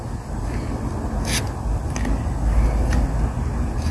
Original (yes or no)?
yes